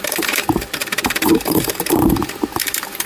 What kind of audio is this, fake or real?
fake